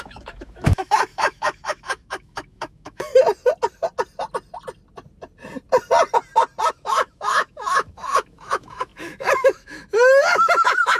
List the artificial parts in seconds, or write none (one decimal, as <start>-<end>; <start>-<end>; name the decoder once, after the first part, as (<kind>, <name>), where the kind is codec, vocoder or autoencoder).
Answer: 0.0-3.1 (autoencoder, DAC-VAE); 6.7-11.0